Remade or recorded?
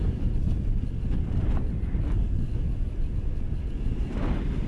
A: recorded